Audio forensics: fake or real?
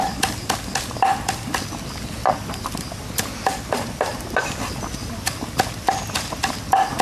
real